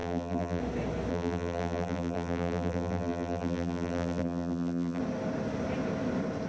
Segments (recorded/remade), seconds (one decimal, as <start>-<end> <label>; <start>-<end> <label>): 0.0-0.6 remade; 0.6-1.1 recorded; 1.1-5.0 remade; 5.0-6.5 recorded